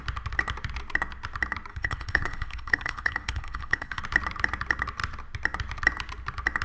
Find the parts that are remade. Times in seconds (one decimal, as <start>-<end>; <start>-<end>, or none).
1.7-4.0